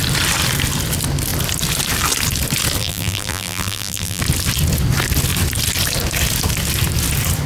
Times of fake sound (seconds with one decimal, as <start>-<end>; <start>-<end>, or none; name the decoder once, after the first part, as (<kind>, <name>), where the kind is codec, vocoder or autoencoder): 2.8-4.2 (vocoder, BigVGAN v2)